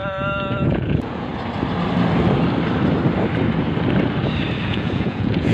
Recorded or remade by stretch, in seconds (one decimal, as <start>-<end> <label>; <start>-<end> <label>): 0.0-0.7 recorded; 0.7-1.3 remade; 1.3-4.6 recorded; 4.6-5.5 remade